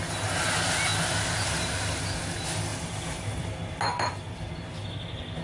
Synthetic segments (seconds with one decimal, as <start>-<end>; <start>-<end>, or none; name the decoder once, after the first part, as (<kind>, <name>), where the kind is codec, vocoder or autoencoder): 2.7-4.5 (vocoder, BigVGAN v2)